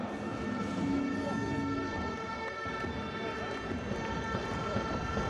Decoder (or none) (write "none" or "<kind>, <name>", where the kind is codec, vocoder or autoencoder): none